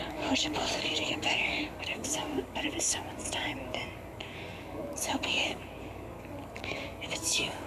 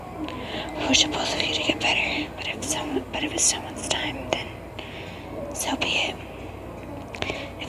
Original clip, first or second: second